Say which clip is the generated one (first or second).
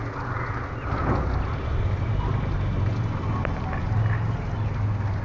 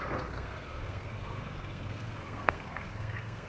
second